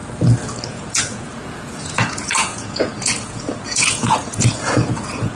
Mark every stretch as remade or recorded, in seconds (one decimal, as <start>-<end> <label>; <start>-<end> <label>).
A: 0.0-0.7 recorded; 0.7-5.3 remade